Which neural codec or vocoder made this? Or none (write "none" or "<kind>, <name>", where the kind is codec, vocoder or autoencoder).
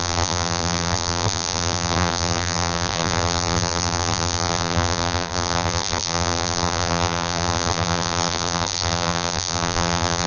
vocoder, BigVGAN v2